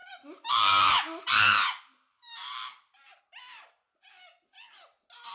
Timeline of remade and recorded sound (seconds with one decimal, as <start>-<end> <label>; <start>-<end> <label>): 0.0-3.2 remade; 3.2-5.3 recorded